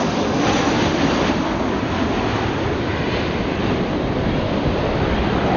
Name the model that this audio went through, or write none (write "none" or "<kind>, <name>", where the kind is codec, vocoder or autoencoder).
vocoder, BigVGAN v2